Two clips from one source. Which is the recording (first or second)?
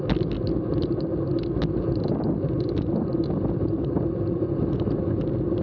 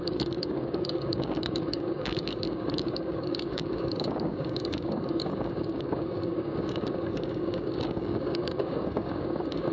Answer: first